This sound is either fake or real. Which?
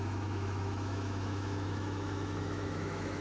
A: fake